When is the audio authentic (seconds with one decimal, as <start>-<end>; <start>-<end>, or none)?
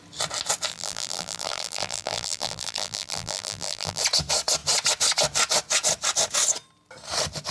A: 0.0-0.7; 4.0-7.5